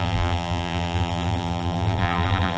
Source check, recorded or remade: remade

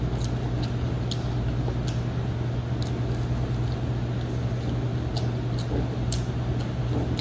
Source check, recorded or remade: recorded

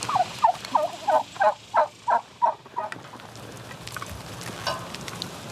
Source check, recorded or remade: recorded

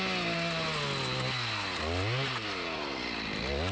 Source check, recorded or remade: recorded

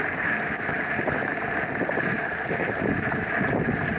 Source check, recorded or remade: recorded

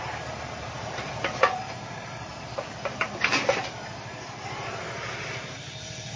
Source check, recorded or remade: remade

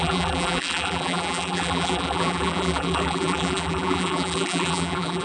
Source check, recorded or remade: remade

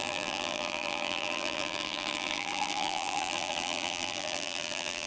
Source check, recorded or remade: remade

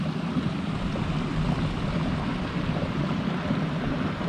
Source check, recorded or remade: recorded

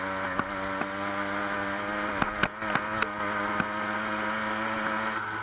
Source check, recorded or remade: recorded